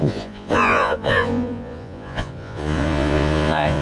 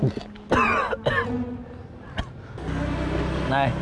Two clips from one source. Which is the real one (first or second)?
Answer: second